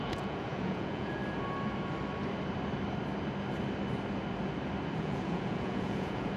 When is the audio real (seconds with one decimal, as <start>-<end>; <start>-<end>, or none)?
1.2-5.0